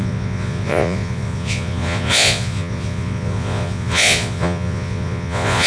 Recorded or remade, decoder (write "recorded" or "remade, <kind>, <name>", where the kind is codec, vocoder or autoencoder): remade, vocoder, Vocos